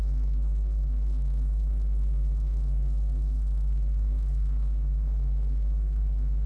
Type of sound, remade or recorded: remade